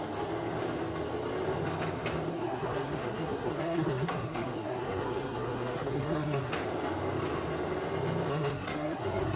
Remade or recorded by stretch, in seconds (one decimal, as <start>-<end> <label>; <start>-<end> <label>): 0.0-2.3 recorded; 2.3-6.5 remade; 6.5-8.3 recorded; 8.3-9.4 remade